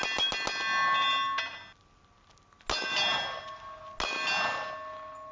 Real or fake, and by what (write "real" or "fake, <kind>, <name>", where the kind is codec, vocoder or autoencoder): real